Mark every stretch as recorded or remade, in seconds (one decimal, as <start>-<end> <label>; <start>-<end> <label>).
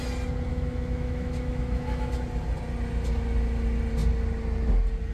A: 0.0-0.5 recorded; 0.5-2.1 remade; 2.1-5.1 recorded